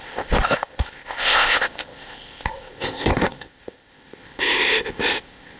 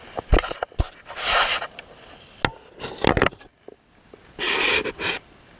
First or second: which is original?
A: second